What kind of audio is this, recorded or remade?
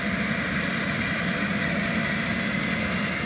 recorded